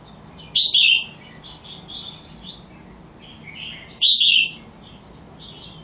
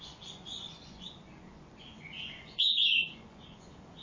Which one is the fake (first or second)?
second